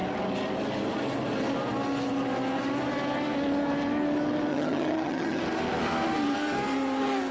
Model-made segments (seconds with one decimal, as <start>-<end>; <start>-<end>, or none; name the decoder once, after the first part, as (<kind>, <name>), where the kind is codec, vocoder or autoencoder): 4.5-5.4 (vocoder, HiFi-GAN)